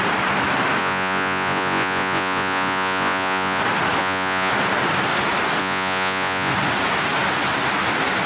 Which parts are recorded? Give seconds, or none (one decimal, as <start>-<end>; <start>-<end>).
0.0-0.8; 3.6-4.0; 4.5-5.6; 6.5-8.3